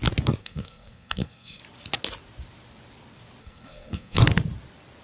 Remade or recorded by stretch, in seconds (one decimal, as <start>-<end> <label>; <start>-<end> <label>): 0.0-0.4 recorded; 0.4-1.6 remade; 1.6-3.4 recorded; 3.4-4.2 remade; 4.2-5.0 recorded